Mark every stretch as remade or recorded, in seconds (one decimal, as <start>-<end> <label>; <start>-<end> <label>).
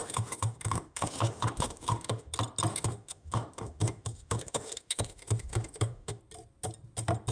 0.0-2.3 remade; 2.3-2.7 recorded; 2.7-6.2 remade; 6.2-7.3 recorded